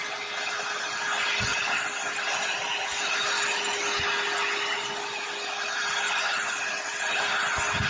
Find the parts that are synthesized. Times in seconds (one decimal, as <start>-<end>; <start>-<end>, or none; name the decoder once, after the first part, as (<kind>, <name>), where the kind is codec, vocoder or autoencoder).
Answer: none